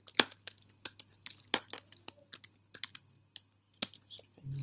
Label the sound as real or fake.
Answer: real